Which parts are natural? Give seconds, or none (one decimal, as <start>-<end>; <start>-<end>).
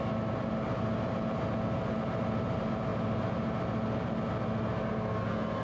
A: 0.0-5.6